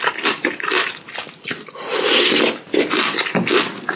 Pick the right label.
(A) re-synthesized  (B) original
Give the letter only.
B